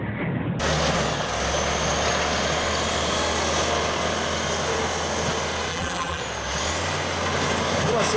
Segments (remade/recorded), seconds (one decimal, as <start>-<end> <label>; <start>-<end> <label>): 0.0-5.7 recorded; 5.7-6.2 remade; 6.2-8.2 recorded